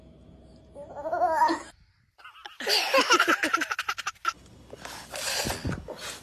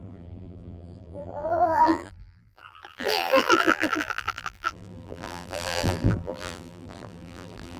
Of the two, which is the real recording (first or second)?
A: first